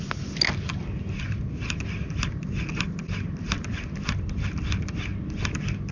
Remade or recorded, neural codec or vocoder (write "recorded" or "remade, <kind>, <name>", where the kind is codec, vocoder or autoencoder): recorded